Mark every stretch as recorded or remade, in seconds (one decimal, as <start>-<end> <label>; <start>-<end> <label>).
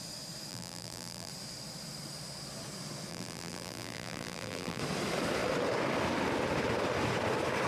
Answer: 0.0-0.5 recorded; 0.5-1.3 remade; 1.3-3.1 recorded; 3.1-4.8 remade; 4.8-7.7 recorded